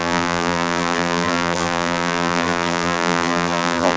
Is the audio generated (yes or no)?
yes